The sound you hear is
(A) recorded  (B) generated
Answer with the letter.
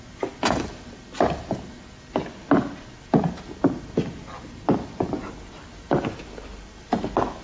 A